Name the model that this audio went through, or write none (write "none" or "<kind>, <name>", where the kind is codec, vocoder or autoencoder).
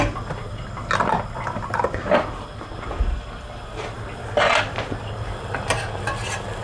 none